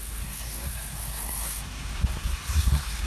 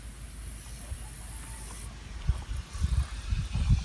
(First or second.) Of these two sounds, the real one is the second